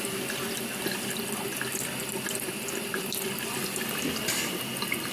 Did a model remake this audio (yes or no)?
no